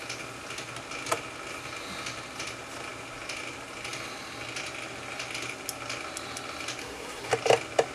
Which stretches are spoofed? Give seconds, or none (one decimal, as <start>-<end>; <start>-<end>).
6.8-7.3